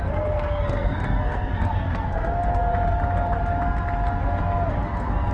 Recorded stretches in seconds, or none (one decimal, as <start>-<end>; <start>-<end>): 2.7-4.7